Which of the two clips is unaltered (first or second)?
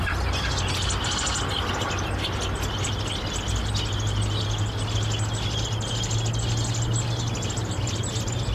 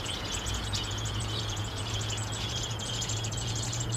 first